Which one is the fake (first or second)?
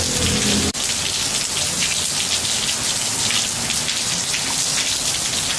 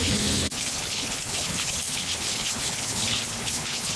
second